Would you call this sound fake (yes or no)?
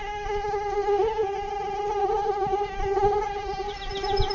no